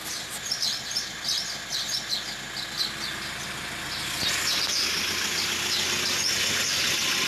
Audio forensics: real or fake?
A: real